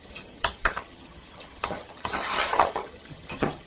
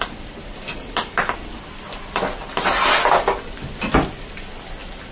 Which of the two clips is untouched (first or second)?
second